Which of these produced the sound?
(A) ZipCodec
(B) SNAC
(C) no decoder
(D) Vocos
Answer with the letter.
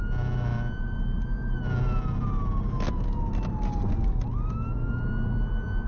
C